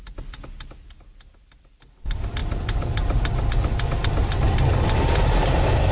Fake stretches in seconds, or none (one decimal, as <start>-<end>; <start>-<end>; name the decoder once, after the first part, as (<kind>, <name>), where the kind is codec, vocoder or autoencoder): none